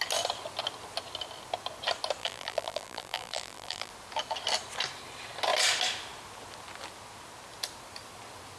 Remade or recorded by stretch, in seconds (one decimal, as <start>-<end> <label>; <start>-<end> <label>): 0.0-2.2 recorded; 2.2-3.9 remade; 3.9-8.6 recorded